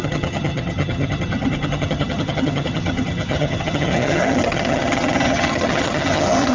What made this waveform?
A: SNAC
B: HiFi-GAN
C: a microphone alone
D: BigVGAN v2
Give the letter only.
B